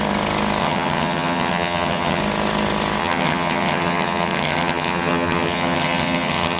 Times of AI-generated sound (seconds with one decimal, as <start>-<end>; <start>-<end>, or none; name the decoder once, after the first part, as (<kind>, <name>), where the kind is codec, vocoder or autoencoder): 0.6-2.2 (vocoder, HiFi-GAN); 3.0-6.6